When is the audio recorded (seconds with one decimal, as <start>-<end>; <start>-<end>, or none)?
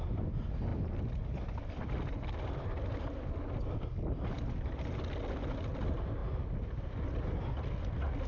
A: 0.0-8.3